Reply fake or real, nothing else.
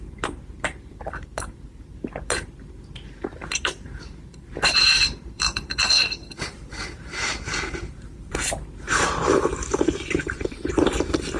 fake